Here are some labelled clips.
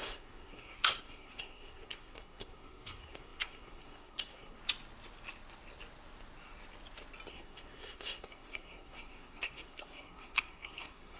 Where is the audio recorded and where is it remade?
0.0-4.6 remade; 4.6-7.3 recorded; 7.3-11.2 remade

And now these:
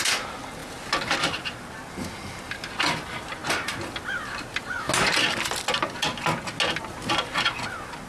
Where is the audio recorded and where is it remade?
0.0-8.1 recorded

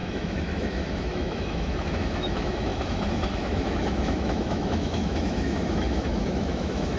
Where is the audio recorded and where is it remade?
0.0-7.0 remade